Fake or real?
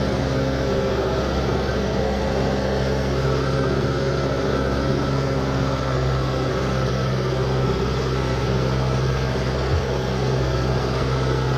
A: fake